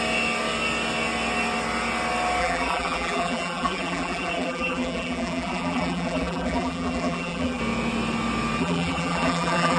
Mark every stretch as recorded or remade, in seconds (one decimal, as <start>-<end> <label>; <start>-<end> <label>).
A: 0.0-2.4 recorded; 2.4-7.6 remade; 7.6-8.6 recorded; 8.6-9.8 remade